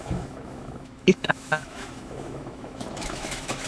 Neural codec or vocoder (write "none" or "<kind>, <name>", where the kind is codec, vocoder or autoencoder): autoencoder, DAC-VAE